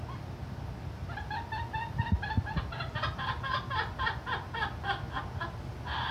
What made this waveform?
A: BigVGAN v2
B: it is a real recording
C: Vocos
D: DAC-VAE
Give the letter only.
B